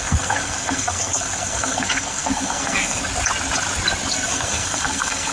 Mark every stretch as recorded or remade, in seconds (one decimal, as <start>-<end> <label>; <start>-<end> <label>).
0.0-3.0 remade; 3.0-4.1 recorded; 4.1-5.3 remade